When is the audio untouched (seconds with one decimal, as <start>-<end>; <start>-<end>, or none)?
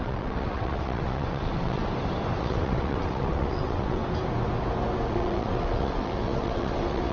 1.8-2.4; 4.0-5.1